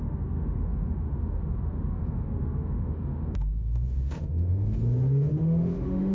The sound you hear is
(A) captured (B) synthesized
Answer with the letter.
B